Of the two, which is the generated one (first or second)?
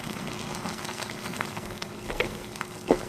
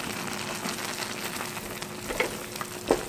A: first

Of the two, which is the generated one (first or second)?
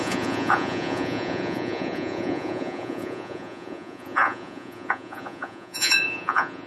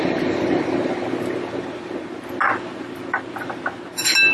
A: first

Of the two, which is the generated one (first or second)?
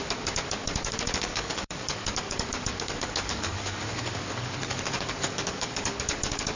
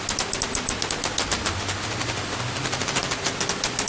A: first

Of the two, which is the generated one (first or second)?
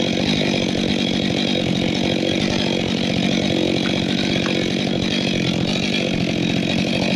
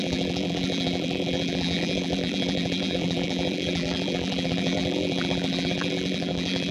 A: second